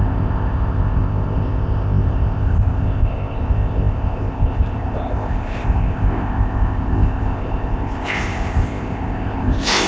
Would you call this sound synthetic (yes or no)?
yes